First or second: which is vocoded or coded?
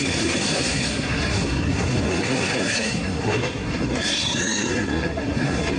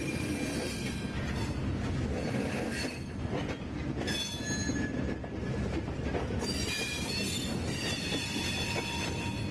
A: first